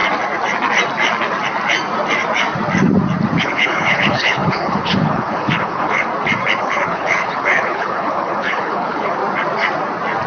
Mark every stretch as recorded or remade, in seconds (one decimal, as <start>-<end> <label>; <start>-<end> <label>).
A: 0.0-3.4 recorded; 3.4-6.1 remade; 6.1-6.6 recorded; 6.6-9.2 remade; 9.2-10.3 recorded

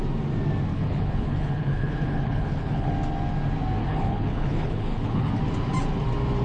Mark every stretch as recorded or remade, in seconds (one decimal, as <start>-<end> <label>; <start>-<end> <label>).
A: 0.0-0.7 recorded; 0.7-2.9 remade; 2.9-3.8 recorded; 3.8-5.3 remade; 5.3-6.4 recorded